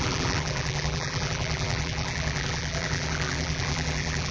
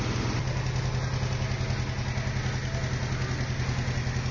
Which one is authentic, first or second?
second